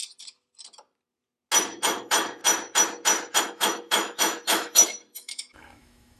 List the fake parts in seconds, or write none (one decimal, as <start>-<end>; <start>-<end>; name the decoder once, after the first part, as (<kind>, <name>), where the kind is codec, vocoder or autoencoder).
2.0-2.4 (autoencoder, DAC-VAE); 3.4-6.2